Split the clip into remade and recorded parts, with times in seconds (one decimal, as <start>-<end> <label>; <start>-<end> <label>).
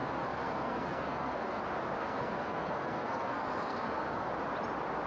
0.0-1.6 remade; 1.6-2.0 recorded; 2.0-4.3 remade; 4.3-5.1 recorded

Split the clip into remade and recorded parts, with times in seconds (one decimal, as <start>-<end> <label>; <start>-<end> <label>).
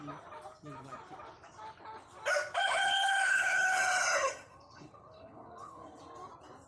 0.0-2.6 recorded; 2.6-6.0 remade; 6.0-6.7 recorded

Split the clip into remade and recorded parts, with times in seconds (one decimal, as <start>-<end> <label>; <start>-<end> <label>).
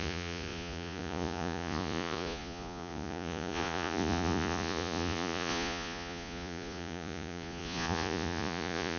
0.0-9.0 remade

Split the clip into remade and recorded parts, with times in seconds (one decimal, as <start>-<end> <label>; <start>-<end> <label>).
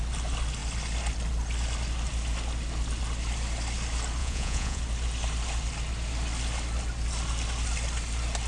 0.0-4.2 recorded; 4.2-4.8 remade; 4.8-8.5 recorded